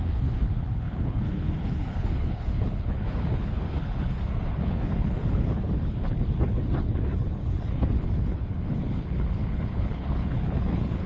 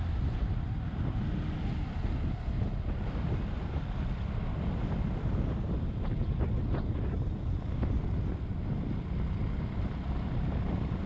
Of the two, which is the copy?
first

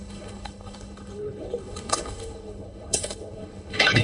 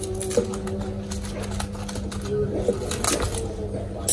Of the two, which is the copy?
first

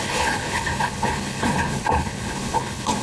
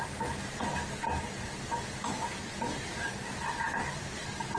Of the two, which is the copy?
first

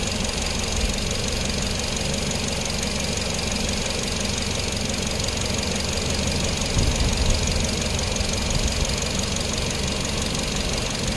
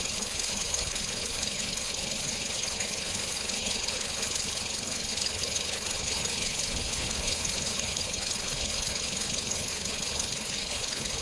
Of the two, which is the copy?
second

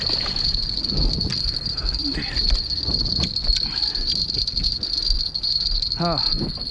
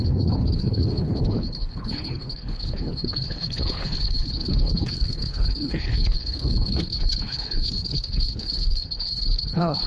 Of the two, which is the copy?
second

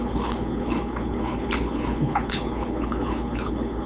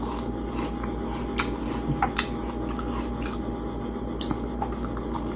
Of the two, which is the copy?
first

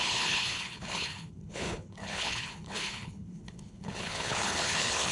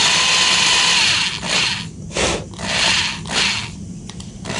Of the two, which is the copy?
first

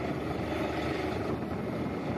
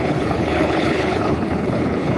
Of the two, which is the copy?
second